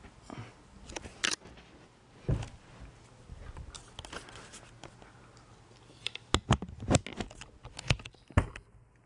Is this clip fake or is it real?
real